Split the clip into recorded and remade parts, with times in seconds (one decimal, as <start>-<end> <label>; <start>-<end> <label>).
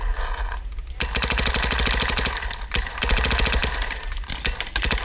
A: 0.0-5.0 recorded